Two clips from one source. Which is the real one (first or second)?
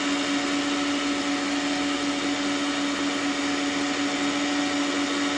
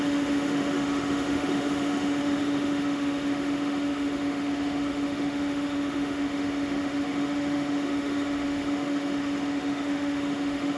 first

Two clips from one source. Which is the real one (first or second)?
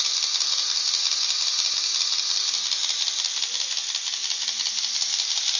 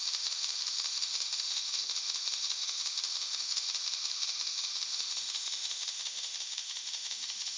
first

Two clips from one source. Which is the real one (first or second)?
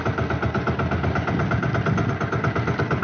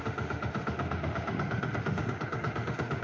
first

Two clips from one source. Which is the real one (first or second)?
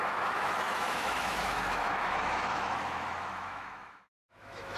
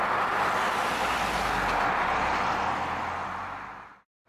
second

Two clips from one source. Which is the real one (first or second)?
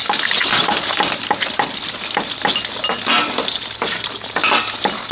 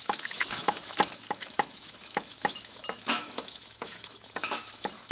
first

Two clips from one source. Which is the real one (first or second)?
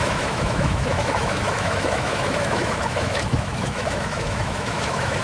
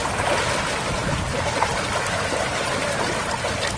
second